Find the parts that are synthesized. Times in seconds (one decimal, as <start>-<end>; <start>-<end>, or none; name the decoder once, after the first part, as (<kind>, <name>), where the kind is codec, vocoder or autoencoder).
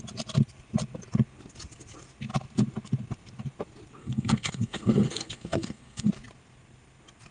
4.0-6.1 (codec, SNAC)